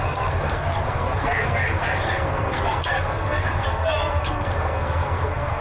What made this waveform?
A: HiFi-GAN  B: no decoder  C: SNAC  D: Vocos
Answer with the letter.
C